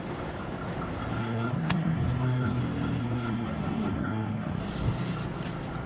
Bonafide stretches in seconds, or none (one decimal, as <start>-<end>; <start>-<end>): 0.0-1.2; 2.6-3.0; 4.6-5.9